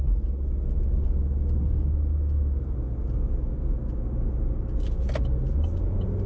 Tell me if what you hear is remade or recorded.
recorded